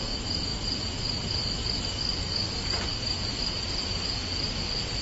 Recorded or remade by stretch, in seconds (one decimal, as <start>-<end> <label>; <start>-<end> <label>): 0.0-1.6 recorded; 1.6-3.0 remade; 3.0-5.0 recorded